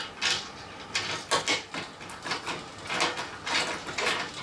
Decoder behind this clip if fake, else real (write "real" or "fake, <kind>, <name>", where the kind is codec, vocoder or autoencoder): real